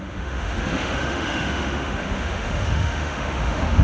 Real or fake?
fake